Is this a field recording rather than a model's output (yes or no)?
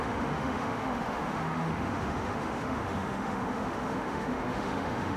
no